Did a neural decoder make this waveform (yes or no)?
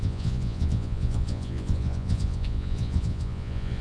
yes